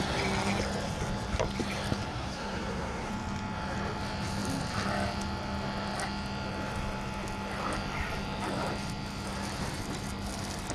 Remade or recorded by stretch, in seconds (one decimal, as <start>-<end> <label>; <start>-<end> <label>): 0.0-2.1 recorded; 2.1-3.1 remade; 3.1-10.7 recorded